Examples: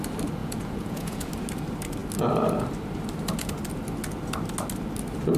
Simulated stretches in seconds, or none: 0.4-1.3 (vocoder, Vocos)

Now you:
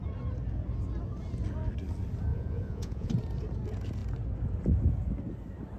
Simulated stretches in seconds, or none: 2.3-3.1 (vocoder, Vocos)

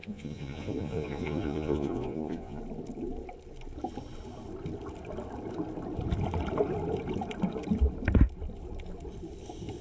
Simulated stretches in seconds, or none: 0.0-2.6 (vocoder, Vocos)

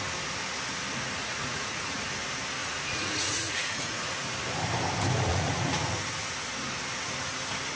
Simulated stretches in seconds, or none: 1.2-2.0 (vocoder, Vocos); 2.6-4.3; 5.3-5.9

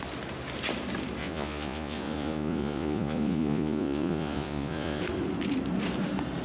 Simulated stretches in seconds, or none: 1.2-5.0 (vocoder, Vocos)

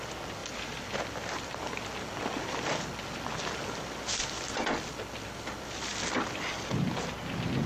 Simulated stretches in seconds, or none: none

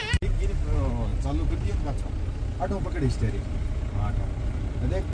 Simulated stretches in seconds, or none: none